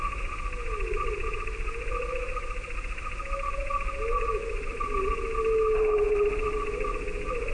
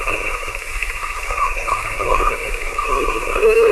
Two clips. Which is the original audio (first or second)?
first